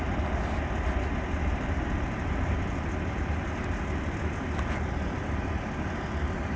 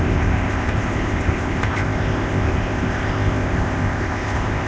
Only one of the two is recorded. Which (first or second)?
first